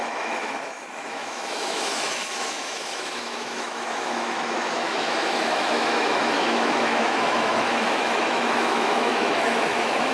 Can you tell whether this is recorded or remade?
remade